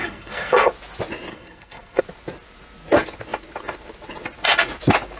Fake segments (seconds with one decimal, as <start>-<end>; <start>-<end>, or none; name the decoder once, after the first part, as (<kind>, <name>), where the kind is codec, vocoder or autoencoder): 0.0-0.7 (codec, SNAC); 1.3-2.0

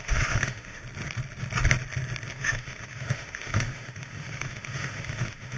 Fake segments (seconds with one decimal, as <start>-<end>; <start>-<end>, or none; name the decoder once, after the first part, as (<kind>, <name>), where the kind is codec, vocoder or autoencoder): 0.0-0.8 (autoencoder, DAC-VAE); 2.3-5.6

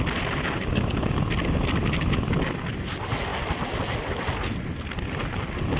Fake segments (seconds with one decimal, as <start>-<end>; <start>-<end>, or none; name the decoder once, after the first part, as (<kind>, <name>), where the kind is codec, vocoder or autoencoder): none

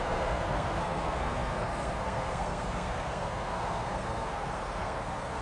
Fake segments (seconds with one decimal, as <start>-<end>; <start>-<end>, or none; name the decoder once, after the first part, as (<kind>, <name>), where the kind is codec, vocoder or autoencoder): 0.0-5.4 (codec, SNAC)

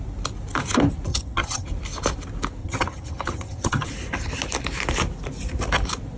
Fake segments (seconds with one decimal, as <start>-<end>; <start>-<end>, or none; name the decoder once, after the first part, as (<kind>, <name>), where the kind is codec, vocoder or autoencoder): 1.1-1.7 (vocoder, HiFi-GAN); 2.6-3.9

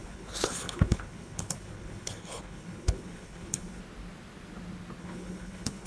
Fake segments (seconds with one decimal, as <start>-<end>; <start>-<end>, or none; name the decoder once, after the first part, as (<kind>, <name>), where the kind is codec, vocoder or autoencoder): 0.0-3.8 (codec, HILCodec); 5.0-5.9

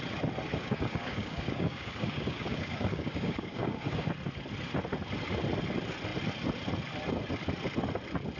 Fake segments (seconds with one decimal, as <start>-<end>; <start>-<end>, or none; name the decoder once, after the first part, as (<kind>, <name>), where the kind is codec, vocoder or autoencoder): 0.5-4.1 (codec, DAC)

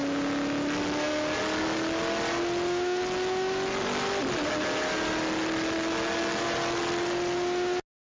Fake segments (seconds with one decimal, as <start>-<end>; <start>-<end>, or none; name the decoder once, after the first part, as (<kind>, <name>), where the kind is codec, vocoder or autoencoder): none